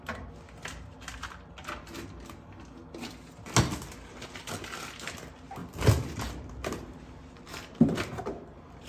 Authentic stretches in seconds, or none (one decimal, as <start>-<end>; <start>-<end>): 0.0-8.9